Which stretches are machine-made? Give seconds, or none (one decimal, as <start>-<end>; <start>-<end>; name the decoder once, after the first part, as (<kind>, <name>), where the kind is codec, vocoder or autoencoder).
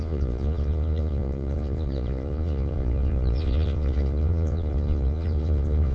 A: 0.0-5.9 (vocoder, Vocos)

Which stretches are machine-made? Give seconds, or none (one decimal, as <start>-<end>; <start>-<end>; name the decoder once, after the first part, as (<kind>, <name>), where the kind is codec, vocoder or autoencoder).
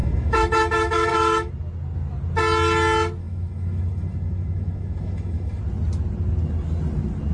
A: 0.0-1.5 (autoencoder, DAC-VAE); 3.2-5.6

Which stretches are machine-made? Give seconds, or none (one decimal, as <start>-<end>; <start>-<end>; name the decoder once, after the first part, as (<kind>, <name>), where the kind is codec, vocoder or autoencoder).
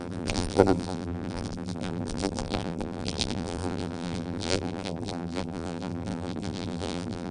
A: 0.0-7.3 (vocoder, BigVGAN v2)